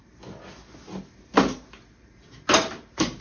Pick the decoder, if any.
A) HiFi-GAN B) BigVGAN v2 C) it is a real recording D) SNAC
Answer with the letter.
C